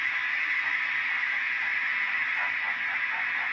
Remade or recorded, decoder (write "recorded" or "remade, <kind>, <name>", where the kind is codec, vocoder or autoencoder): recorded